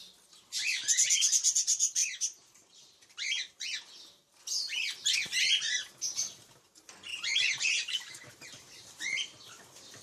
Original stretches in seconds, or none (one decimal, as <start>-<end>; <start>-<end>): 0.0-2.0; 3.7-7.1; 9.6-10.0